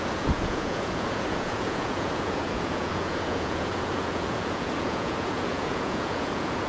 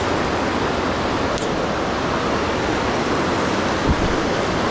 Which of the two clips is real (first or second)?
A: second